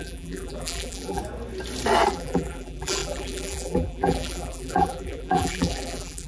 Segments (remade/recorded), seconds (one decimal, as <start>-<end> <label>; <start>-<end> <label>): 0.0-1.2 remade; 1.2-2.1 recorded; 2.1-6.3 remade